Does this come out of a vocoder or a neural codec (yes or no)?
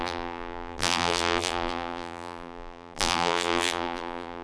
yes